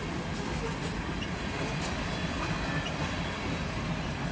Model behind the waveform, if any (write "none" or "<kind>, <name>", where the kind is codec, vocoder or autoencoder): none